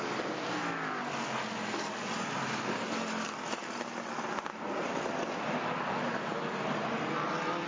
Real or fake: real